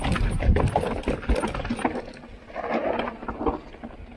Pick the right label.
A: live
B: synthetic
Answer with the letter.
A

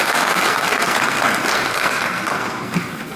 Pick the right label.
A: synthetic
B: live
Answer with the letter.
A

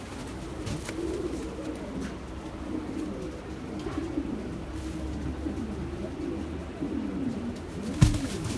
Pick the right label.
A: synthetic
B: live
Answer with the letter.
B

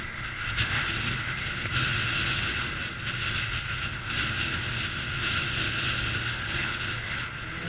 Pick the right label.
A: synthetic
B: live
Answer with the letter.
B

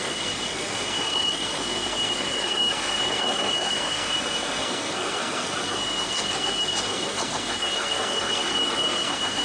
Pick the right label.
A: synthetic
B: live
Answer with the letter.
A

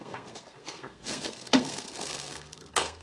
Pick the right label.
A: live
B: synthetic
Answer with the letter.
B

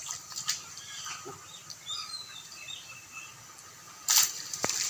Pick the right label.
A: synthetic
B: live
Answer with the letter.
B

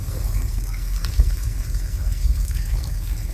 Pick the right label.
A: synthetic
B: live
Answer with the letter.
A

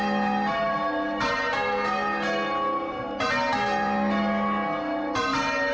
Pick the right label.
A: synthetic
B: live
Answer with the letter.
B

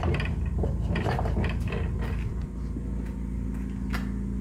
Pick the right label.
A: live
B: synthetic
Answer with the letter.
A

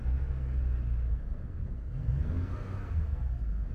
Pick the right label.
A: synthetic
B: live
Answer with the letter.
A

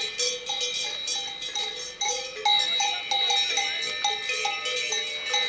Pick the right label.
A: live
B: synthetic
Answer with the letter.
A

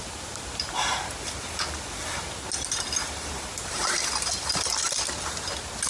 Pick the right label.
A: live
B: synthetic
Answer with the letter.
A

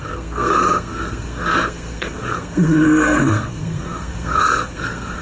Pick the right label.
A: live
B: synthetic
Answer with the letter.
B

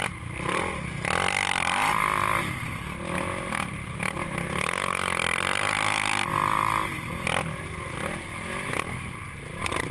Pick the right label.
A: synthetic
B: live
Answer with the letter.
B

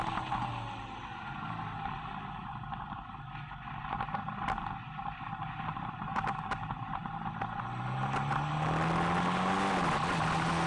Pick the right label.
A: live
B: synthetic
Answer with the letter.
A